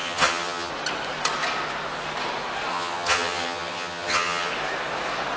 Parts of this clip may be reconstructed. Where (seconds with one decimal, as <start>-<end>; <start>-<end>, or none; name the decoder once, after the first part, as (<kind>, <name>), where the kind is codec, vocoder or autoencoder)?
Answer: 0.0-0.7 (vocoder, HiFi-GAN); 2.7-4.5